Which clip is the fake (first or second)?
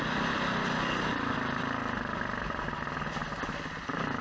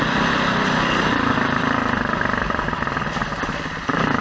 second